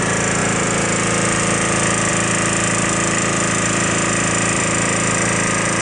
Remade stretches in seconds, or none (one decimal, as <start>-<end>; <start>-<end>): none